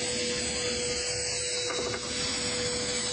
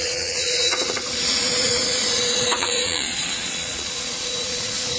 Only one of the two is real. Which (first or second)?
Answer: first